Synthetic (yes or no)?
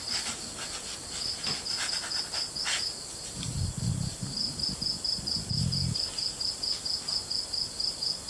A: no